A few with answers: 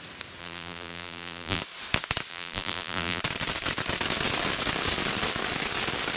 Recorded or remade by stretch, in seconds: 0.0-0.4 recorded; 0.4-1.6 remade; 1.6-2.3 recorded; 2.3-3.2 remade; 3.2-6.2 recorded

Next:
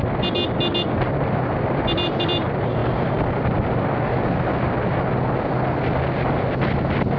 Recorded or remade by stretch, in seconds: 0.0-7.2 recorded

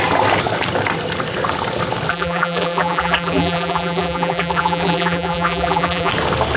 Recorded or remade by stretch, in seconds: 0.0-2.1 recorded; 2.1-6.1 remade; 6.1-6.6 recorded

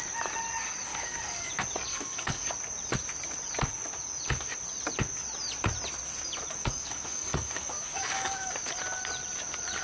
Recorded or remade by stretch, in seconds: 0.0-0.9 recorded; 0.9-1.5 remade; 1.5-1.9 recorded; 1.9-2.5 remade; 2.5-6.6 recorded; 6.6-8.5 remade; 8.5-9.8 recorded

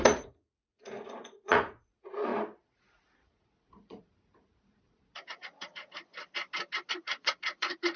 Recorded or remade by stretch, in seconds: 0.0-2.3 remade; 2.3-3.1 recorded; 3.1-6.1 remade; 6.1-6.9 recorded; 6.9-8.0 remade

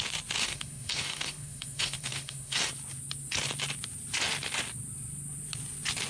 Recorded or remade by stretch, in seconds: 0.0-0.4 recorded; 0.4-2.7 remade; 2.7-6.1 recorded